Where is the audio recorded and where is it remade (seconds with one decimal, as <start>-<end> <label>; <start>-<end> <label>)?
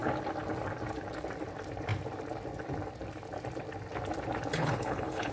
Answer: 0.0-4.5 recorded; 4.5-5.3 remade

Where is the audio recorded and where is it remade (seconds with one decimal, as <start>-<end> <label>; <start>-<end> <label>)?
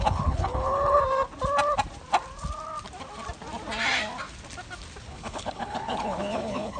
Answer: 0.0-1.0 remade; 1.0-5.1 recorded; 5.1-6.8 remade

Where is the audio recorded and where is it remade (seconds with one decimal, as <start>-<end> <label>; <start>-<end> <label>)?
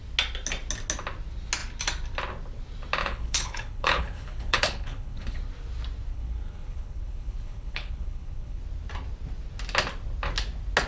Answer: 0.0-3.0 recorded; 3.0-5.4 remade; 5.4-6.1 recorded; 6.1-8.6 remade; 8.6-10.9 recorded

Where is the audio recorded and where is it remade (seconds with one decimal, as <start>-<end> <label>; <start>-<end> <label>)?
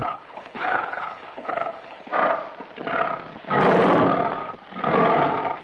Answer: 0.0-2.1 remade; 2.1-5.6 recorded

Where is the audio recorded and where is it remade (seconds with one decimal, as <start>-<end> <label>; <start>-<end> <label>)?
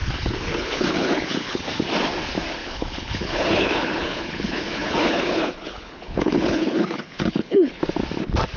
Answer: 0.0-1.6 remade; 1.6-2.6 recorded; 2.6-7.8 remade; 7.8-8.6 recorded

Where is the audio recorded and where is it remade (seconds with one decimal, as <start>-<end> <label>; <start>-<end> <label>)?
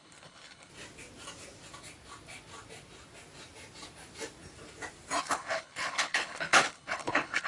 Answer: 0.0-0.7 remade; 0.7-5.2 recorded; 5.2-7.5 remade